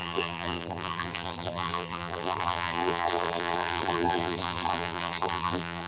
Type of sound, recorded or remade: remade